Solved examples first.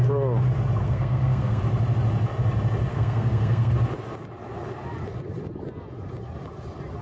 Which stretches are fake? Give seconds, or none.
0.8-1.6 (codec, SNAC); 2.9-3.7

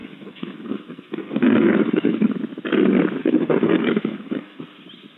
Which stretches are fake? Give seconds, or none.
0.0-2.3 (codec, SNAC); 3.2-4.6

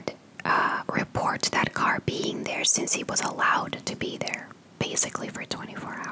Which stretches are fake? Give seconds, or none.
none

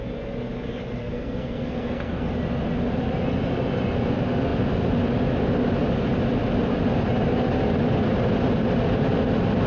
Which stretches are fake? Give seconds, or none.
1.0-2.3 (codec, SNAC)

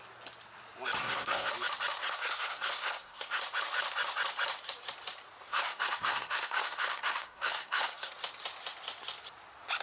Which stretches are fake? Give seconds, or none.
1.0-1.5 (codec, SNAC); 2.0-3.4; 5.5-8.1

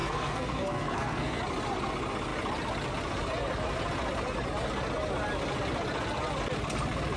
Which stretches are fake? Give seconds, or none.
0.0-1.4 (codec, SNAC)